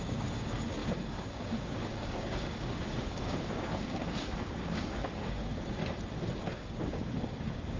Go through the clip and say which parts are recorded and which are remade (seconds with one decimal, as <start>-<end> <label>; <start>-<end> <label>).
0.0-5.8 remade; 5.8-6.4 recorded; 6.4-7.8 remade